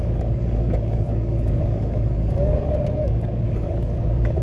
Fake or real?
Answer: fake